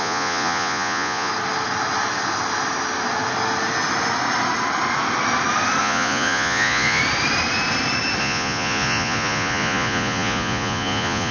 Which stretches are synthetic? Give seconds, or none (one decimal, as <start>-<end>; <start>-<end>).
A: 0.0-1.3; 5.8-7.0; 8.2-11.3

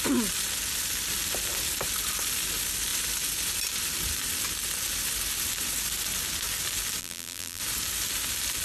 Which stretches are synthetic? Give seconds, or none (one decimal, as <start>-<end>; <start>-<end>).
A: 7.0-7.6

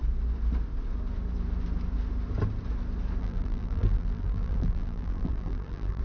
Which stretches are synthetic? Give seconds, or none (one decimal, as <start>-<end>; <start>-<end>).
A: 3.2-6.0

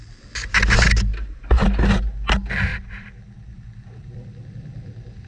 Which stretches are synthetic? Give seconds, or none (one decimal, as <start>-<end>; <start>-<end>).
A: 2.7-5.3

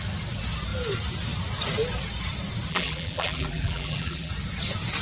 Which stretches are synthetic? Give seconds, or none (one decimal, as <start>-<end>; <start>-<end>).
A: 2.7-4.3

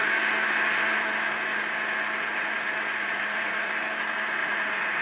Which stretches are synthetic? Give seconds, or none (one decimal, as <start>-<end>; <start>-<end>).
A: 2.9-3.7; 4.4-5.0

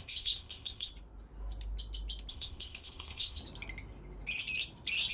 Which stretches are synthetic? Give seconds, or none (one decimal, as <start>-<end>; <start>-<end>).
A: 0.0-0.9; 2.3-3.4

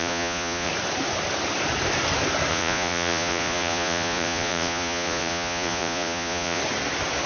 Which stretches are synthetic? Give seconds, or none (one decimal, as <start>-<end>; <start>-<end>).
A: 0.0-0.7; 2.5-6.6